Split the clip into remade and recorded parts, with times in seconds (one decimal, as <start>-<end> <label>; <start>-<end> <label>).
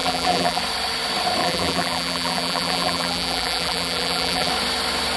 0.0-0.6 remade; 0.6-1.4 recorded; 1.4-4.5 remade; 4.5-5.2 recorded